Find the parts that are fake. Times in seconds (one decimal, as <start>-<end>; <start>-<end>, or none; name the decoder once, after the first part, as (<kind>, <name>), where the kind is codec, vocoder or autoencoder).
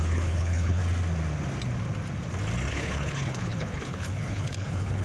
0.0-0.8 (codec, HILCodec); 2.7-5.0